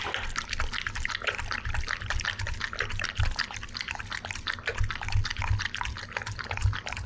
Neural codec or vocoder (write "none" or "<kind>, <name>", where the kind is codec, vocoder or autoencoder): none